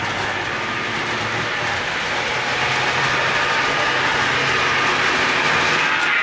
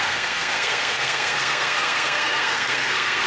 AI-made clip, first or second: second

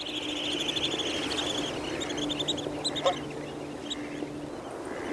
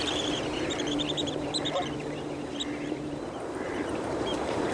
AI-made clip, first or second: second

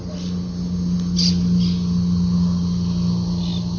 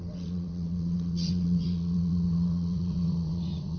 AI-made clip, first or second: second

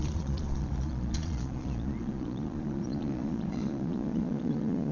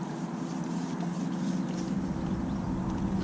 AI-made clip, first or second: first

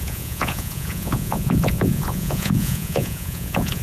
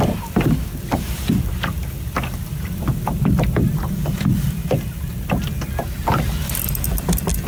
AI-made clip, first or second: first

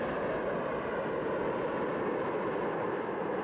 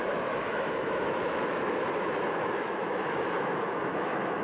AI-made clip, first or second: second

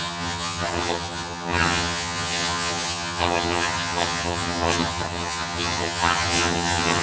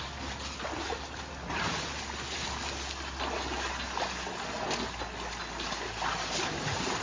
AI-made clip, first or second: first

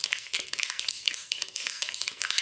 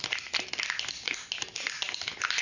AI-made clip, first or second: first